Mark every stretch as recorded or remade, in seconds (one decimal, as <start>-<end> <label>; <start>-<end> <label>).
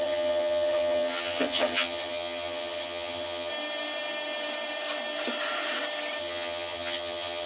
0.0-3.5 remade; 3.5-6.2 recorded; 6.2-7.5 remade